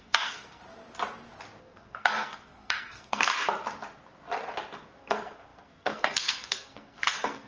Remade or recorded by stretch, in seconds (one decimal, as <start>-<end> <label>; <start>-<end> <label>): 0.0-0.6 remade; 0.6-1.6 recorded; 1.6-3.3 remade; 3.3-5.0 recorded; 5.0-7.5 remade